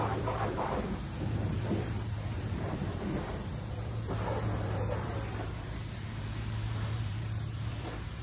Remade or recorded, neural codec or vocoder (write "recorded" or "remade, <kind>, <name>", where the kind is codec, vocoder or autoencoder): remade, vocoder, BigVGAN v2